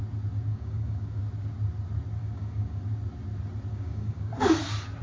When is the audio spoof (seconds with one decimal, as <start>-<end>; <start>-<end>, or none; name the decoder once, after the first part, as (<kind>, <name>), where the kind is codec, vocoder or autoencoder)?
0.5-1.2 (codec, DAC); 2.2-2.8; 3.7-4.5